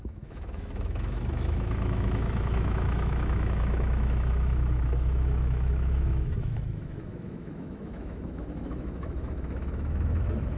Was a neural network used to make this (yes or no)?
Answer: yes